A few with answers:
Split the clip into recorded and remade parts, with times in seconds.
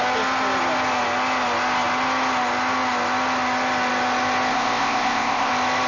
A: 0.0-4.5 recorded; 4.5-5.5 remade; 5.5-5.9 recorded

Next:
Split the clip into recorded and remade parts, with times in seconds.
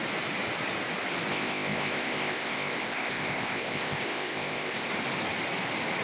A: 0.0-1.3 recorded; 1.3-4.9 remade; 4.9-6.0 recorded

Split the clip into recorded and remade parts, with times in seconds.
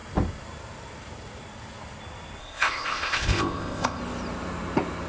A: 0.0-2.4 recorded; 2.4-4.0 remade; 4.0-5.1 recorded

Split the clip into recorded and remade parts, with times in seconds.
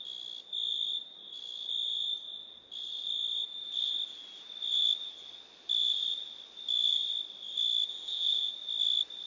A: 0.0-7.9 recorded; 7.9-8.5 remade; 8.5-9.3 recorded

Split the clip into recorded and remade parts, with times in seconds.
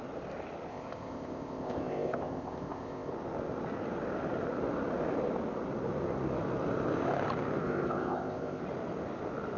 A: 0.0-0.7 recorded; 0.7-3.1 remade; 3.1-7.6 recorded; 7.6-8.6 remade; 8.6-9.6 recorded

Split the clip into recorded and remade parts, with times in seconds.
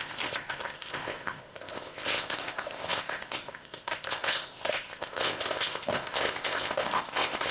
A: 0.0-7.5 remade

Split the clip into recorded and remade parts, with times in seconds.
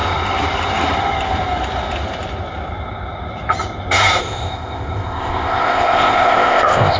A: 0.0-4.2 recorded; 4.2-7.0 remade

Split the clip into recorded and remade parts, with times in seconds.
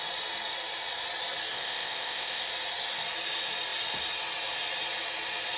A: 0.0-1.5 recorded; 1.5-2.5 remade; 2.5-5.6 recorded